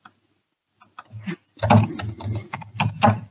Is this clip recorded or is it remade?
recorded